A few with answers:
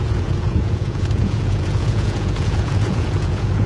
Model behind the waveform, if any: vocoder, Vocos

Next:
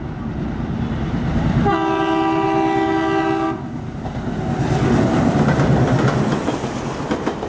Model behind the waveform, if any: none